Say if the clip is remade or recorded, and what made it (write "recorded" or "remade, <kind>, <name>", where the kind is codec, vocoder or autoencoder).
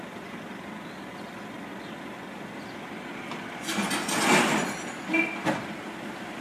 recorded